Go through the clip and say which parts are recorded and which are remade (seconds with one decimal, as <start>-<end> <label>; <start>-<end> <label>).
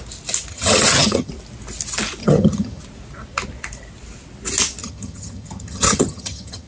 0.0-0.5 recorded; 0.5-1.3 remade; 1.3-2.2 recorded; 2.2-2.8 remade; 2.8-4.8 recorded; 4.8-6.7 remade